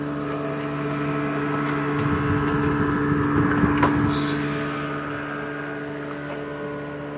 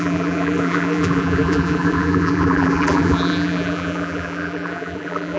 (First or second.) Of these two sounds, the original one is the first